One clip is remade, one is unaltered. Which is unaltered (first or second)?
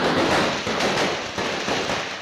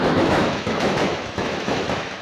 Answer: first